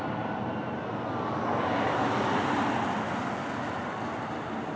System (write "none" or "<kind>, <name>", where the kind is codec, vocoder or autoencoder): none